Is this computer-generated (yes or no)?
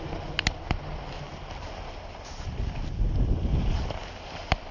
no